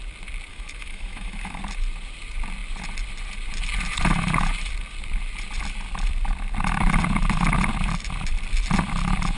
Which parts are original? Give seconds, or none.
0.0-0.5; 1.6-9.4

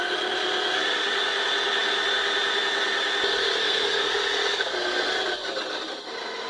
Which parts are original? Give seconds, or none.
0.0-3.4; 5.1-6.5

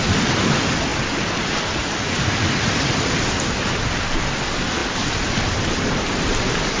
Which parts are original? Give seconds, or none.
0.0-6.8

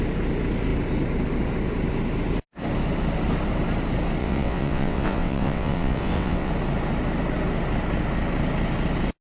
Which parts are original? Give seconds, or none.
0.0-4.2; 6.5-9.2

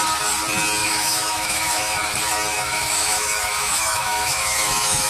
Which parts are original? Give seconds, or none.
0.0-0.8; 2.0-2.5

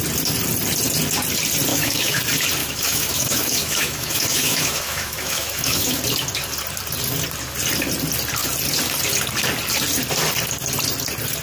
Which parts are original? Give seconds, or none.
0.0-1.7; 2.2-2.6; 6.0-11.4

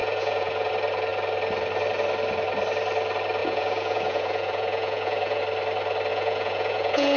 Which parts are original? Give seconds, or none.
0.7-3.4; 5.4-6.1

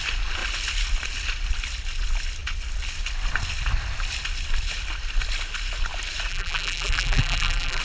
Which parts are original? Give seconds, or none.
0.0-6.3